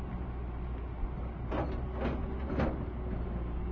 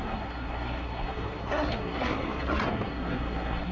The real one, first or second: first